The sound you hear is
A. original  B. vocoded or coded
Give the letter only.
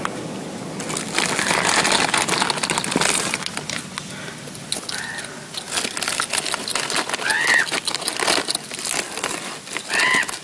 A